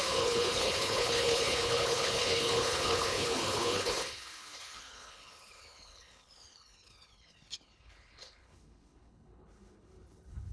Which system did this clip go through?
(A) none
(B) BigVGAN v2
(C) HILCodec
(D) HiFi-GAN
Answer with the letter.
C